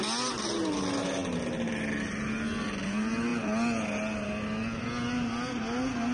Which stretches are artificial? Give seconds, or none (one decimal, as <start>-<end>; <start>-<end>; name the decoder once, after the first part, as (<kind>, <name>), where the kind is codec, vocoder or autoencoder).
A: none